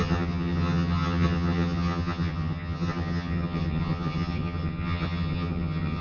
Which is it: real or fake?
fake